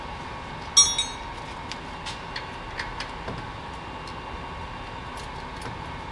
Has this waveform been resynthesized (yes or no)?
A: no